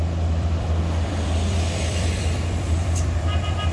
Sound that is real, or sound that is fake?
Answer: fake